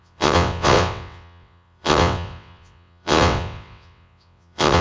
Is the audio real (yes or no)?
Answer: no